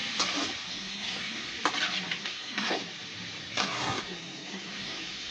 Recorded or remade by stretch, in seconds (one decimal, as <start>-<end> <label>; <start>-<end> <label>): 0.0-0.7 recorded; 0.7-1.5 remade; 1.5-2.2 recorded; 2.2-2.8 remade; 2.8-3.4 recorded; 3.4-5.3 remade